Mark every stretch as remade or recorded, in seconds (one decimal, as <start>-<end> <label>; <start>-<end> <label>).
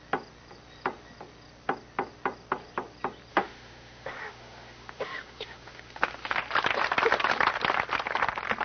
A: 0.0-3.3 recorded; 3.3-6.4 remade; 6.4-8.6 recorded